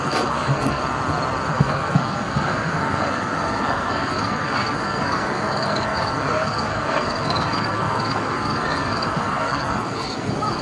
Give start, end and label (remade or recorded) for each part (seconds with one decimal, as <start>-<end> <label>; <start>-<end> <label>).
0.0-0.8 remade; 0.8-1.5 recorded; 1.5-10.6 remade